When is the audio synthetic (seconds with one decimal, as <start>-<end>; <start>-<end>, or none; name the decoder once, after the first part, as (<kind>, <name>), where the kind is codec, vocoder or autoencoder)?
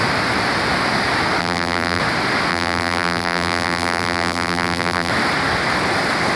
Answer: 1.4-2.0 (vocoder, BigVGAN v2); 2.5-5.1